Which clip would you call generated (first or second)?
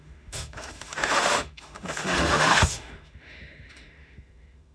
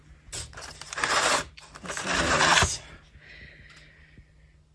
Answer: first